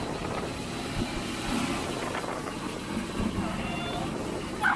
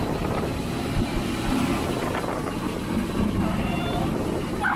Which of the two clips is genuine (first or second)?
first